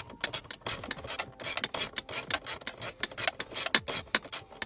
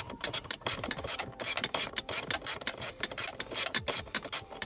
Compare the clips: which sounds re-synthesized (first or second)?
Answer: second